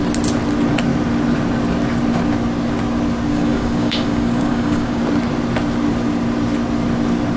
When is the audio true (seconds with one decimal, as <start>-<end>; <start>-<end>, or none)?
0.0-3.3; 5.0-7.4